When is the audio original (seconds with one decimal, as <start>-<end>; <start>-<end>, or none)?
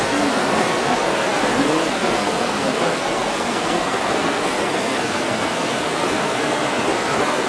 none